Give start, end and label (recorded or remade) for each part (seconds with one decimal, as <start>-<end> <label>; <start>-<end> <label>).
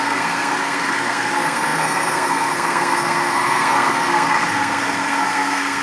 0.0-5.8 remade